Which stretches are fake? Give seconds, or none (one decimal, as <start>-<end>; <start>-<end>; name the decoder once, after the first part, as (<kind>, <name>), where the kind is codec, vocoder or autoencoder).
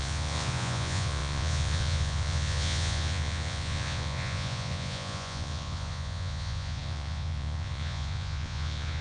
0.0-9.0 (vocoder, Vocos)